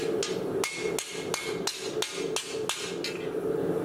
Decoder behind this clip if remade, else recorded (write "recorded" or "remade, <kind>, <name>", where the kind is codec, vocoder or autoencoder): recorded